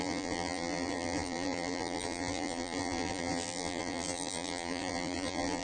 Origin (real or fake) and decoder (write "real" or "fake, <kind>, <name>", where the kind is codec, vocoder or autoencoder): fake, vocoder, BigVGAN v2